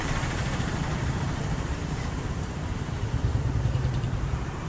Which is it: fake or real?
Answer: fake